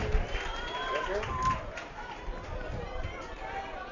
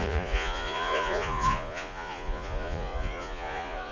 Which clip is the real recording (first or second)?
first